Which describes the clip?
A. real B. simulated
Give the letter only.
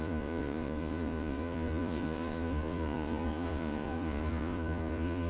B